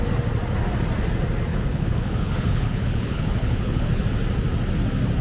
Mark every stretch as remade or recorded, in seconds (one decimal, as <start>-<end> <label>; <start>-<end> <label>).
0.0-1.5 recorded; 1.5-4.0 remade; 4.0-5.2 recorded